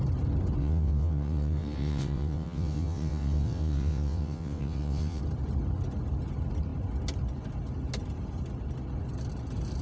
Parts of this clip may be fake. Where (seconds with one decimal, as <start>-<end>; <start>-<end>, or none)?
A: 0.6-5.2